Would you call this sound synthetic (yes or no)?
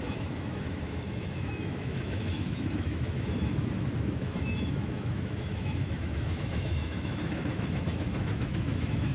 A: yes